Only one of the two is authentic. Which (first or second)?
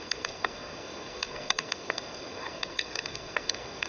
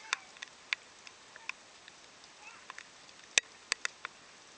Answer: second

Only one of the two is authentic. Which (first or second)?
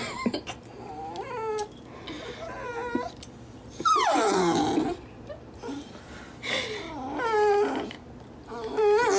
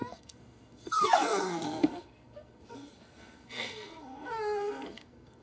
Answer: first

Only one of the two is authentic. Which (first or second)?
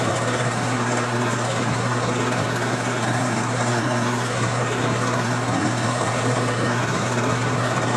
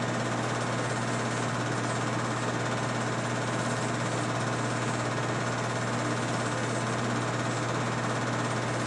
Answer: second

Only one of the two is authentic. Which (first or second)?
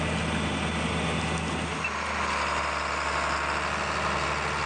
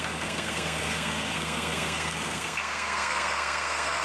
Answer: first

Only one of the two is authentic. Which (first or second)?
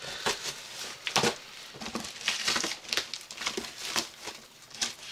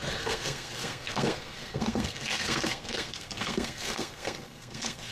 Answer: first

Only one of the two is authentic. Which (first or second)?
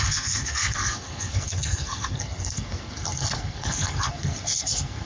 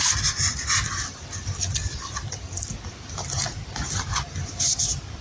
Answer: second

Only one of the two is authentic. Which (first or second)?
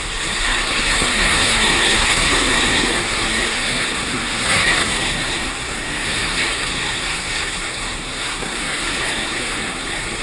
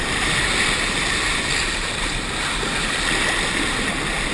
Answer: second